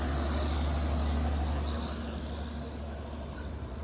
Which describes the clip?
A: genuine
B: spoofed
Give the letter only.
A